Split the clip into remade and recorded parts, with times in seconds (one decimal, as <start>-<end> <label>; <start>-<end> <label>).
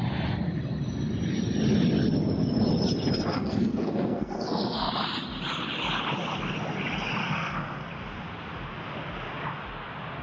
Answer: 0.0-3.3 recorded; 3.3-4.9 remade; 4.9-7.2 recorded; 7.2-7.9 remade; 7.9-10.2 recorded